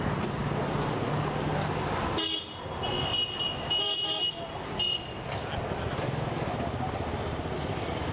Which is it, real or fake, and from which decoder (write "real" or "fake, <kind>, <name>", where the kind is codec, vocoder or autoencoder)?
real